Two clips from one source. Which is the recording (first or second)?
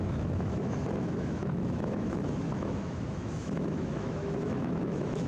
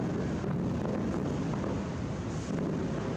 second